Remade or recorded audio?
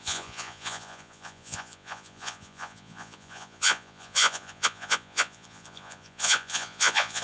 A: remade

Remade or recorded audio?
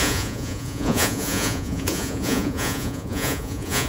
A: remade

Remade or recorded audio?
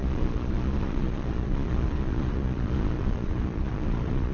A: remade